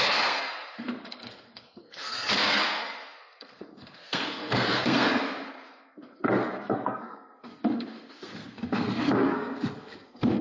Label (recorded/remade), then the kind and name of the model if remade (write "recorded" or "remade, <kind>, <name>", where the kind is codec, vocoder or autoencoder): remade, codec, SNAC